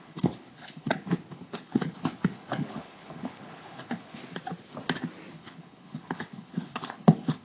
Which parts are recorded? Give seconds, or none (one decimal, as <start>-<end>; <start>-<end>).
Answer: 4.2-5.3